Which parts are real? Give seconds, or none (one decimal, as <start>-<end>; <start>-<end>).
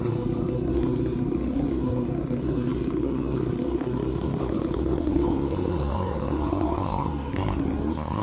none